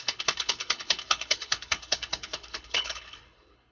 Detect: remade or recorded remade